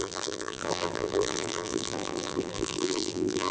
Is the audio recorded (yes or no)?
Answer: no